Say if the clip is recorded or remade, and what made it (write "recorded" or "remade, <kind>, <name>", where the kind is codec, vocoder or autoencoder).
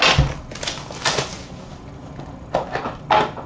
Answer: recorded